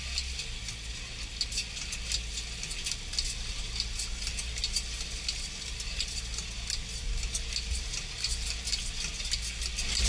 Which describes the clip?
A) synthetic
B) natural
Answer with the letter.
B